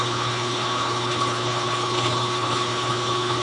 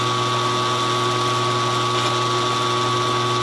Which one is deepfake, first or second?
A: first